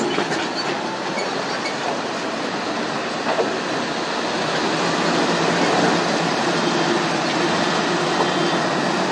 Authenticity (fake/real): real